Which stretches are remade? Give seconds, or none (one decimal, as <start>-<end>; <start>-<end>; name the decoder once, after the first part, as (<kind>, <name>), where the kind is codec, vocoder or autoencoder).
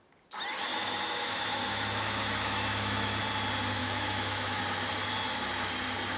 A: 0.7-3.2 (autoencoder, DAC-VAE); 3.8-4.6